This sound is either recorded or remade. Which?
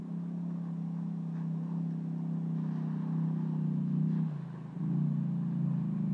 recorded